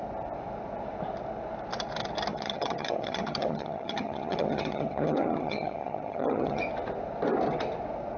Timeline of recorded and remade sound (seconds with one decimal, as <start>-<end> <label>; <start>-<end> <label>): 0.0-2.3 recorded; 2.3-6.6 remade; 6.6-8.2 recorded